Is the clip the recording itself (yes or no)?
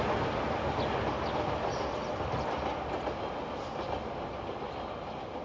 yes